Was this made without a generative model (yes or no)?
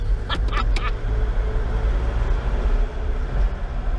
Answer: yes